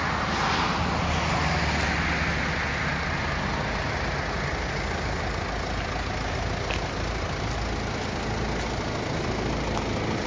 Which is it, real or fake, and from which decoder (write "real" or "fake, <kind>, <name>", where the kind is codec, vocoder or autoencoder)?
real